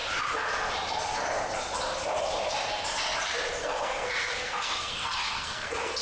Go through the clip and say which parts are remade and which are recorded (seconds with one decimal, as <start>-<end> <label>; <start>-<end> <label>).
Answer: 0.0-3.6 recorded; 3.6-6.0 remade